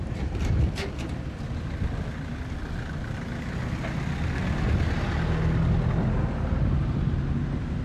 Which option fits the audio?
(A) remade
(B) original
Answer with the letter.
B